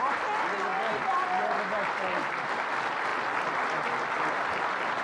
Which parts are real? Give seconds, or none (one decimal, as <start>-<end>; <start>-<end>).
0.0-5.0